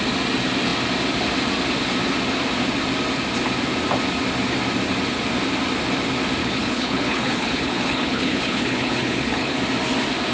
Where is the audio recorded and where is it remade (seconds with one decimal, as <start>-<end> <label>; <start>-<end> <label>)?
0.0-6.4 recorded; 6.4-9.6 remade; 9.6-10.3 recorded